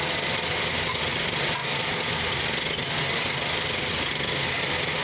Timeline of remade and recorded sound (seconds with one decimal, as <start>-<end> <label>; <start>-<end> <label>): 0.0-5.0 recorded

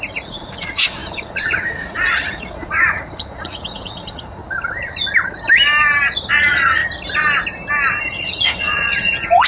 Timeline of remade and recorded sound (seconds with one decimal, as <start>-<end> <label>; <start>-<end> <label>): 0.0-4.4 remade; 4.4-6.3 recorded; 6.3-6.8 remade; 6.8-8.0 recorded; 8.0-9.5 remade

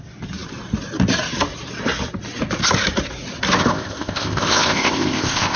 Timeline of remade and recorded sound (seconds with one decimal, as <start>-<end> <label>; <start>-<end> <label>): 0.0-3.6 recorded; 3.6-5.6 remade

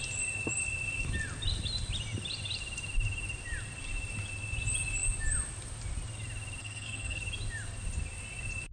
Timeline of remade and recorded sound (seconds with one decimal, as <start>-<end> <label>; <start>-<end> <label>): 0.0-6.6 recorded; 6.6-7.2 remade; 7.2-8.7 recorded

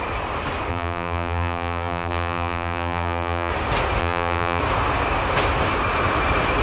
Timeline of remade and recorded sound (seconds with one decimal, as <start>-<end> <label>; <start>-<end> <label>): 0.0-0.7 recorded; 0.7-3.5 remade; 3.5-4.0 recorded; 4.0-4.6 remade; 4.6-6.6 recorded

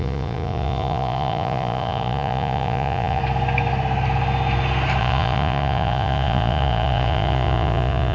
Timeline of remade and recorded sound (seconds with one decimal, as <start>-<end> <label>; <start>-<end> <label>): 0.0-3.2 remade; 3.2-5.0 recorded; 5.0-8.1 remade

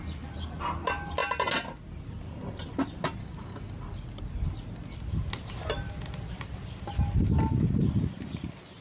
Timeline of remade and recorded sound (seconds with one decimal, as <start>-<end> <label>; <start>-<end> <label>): 0.0-3.2 recorded; 3.2-3.7 remade; 3.7-8.8 recorded